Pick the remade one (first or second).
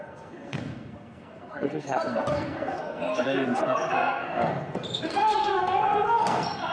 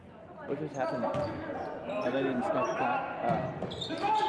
first